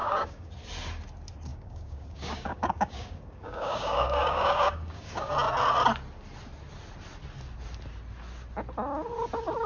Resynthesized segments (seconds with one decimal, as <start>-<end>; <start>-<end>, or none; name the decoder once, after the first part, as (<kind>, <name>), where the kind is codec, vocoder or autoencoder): 0.0-0.5 (codec, DAC); 1.5-5.3